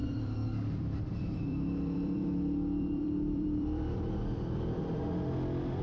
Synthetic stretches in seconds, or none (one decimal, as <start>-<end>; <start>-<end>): 0.0-1.0; 1.5-5.0